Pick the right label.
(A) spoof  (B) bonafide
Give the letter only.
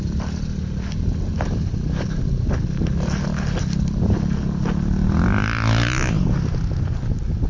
B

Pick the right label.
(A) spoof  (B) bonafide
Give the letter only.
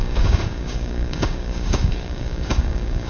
A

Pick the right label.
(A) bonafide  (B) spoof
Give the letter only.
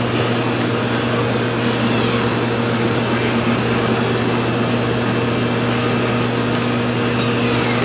A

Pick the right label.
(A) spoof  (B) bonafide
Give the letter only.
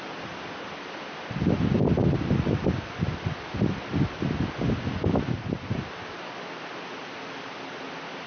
B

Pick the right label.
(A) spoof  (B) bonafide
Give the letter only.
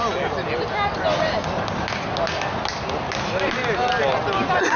B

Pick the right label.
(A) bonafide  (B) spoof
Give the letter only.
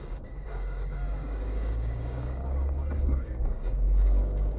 B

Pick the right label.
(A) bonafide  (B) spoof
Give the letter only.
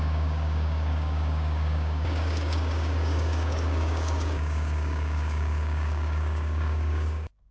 B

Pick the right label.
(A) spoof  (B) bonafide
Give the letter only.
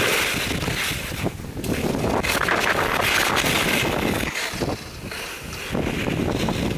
B